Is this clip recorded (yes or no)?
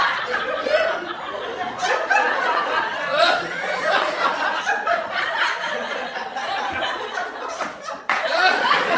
no